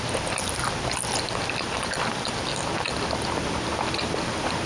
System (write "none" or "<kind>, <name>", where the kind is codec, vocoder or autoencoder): vocoder, BigVGAN v2